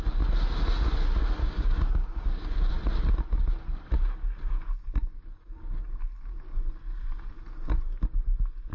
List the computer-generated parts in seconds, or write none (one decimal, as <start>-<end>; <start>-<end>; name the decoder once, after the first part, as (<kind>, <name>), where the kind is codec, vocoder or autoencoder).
1.4-2.7 (codec, DAC)